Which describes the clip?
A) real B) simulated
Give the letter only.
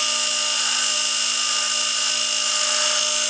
A